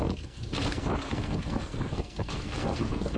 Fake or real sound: fake